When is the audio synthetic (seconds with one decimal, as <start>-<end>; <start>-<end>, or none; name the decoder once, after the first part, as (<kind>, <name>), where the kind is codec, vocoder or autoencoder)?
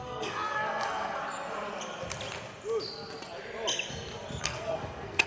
0.0-1.2 (codec, SNAC); 4.4-5.3